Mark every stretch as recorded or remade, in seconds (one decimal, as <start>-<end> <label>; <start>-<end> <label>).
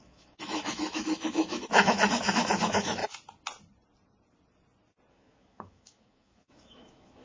0.0-3.0 remade; 3.0-5.1 recorded; 5.1-7.2 remade